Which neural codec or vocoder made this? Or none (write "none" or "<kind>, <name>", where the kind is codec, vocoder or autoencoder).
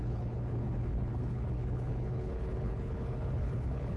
codec, HILCodec